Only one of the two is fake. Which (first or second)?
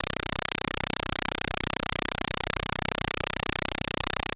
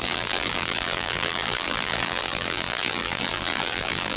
second